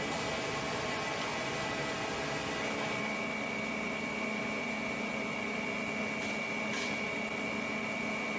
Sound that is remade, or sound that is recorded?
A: recorded